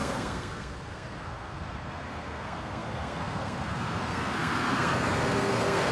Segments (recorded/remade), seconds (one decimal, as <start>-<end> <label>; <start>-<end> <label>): 0.0-5.9 remade